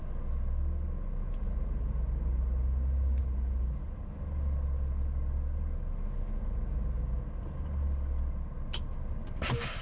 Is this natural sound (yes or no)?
yes